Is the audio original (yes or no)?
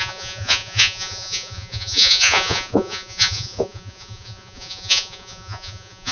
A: no